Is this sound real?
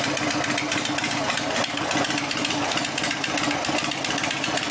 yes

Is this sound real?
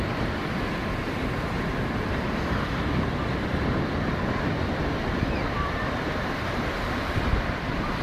yes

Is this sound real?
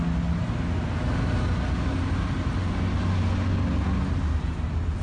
yes